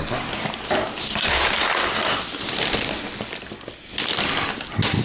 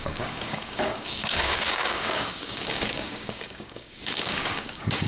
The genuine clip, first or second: first